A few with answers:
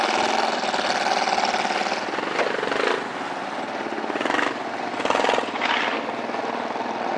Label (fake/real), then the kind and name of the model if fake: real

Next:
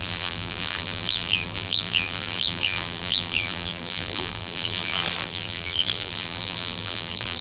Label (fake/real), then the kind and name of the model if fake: fake, vocoder, BigVGAN v2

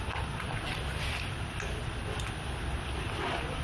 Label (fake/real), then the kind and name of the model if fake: real